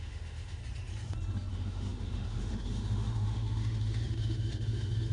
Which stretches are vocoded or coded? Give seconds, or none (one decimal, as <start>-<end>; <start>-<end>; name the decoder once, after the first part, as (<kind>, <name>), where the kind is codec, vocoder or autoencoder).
0.0-0.6 (autoencoder, DAC-VAE); 1.5-5.1